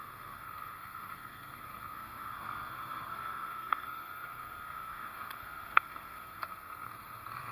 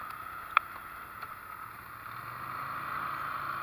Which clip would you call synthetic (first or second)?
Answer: first